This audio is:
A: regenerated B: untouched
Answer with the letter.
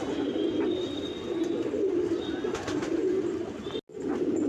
B